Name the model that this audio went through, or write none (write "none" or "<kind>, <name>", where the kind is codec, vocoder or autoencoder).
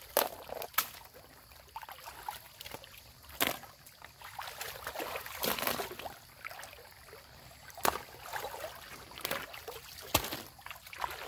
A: none